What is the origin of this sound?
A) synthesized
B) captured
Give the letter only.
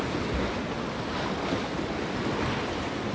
B